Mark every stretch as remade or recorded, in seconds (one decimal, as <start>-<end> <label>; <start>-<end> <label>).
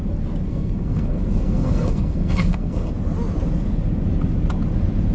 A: 0.0-0.5 recorded; 0.5-2.9 remade; 2.9-5.1 recorded